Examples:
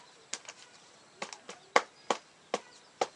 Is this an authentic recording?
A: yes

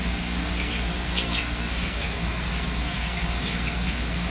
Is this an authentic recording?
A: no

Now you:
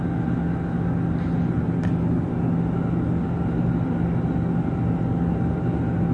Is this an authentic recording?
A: yes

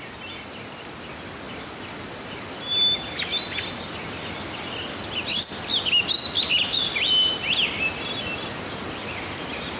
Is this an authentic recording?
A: yes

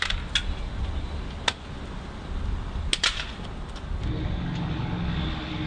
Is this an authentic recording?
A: yes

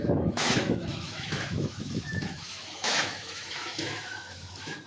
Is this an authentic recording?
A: no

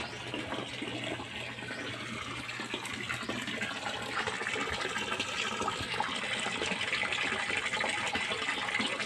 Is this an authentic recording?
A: yes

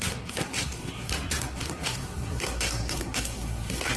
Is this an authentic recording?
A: no